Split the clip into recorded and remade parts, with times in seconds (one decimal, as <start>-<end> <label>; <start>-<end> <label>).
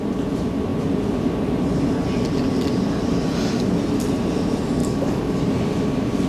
0.0-4.8 recorded; 4.8-5.4 remade; 5.4-6.3 recorded